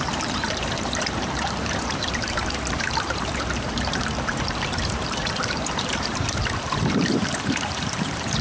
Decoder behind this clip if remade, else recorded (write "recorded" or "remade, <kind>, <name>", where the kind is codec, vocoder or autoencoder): remade, vocoder, BigVGAN v2